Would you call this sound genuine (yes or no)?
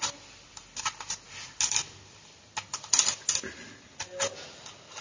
yes